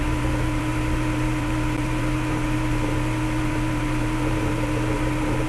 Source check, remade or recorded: remade